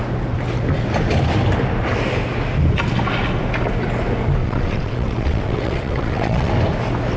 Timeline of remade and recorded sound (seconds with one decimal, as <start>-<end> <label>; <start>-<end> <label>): 0.0-4.4 recorded; 4.4-6.5 remade; 6.5-7.2 recorded